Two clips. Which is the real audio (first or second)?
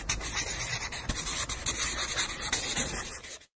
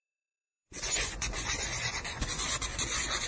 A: first